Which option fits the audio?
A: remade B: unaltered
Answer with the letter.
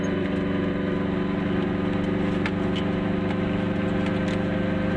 B